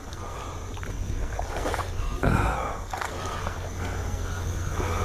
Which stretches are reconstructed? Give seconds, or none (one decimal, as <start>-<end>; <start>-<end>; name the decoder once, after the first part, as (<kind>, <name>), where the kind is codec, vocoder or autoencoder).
0.0-0.4 (codec, SNAC); 0.9-5.0